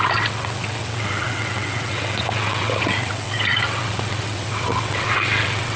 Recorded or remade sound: remade